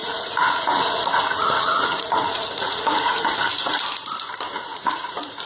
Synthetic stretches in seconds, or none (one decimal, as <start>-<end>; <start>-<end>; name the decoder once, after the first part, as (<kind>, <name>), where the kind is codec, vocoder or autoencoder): 0.0-3.3 (vocoder, Vocos); 4.7-5.5